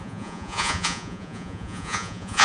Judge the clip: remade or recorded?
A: remade